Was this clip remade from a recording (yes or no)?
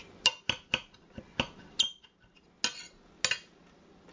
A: no